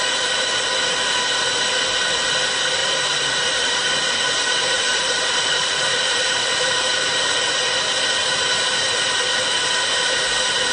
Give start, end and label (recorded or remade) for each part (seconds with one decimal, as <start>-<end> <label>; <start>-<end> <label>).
0.0-2.8 recorded; 2.8-7.2 remade; 7.2-8.2 recorded; 8.2-8.9 remade; 8.9-10.7 recorded